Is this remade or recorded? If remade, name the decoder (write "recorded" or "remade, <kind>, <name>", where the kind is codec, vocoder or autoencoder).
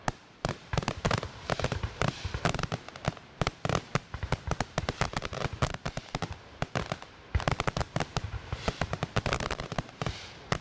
remade, vocoder, BigVGAN v2